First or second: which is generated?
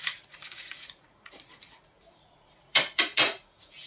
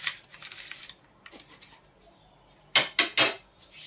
first